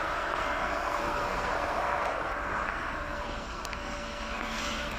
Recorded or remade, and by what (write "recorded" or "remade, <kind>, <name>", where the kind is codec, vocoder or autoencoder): remade, codec, SNAC